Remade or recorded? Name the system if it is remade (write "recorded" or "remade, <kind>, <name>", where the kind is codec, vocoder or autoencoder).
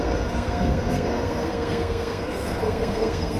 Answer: remade, codec, SNAC